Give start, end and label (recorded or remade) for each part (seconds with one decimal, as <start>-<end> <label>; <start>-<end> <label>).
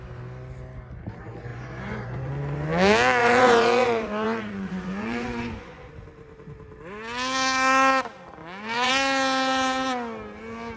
0.0-1.5 recorded; 1.5-2.3 remade; 2.3-3.2 recorded; 3.2-5.9 remade; 5.9-8.4 recorded; 8.4-8.9 remade; 8.9-10.8 recorded